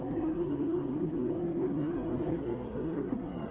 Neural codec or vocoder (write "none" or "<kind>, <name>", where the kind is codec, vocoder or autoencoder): codec, SNAC